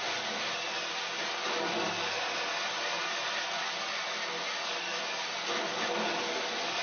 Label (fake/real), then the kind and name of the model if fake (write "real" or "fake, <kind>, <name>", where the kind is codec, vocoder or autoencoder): real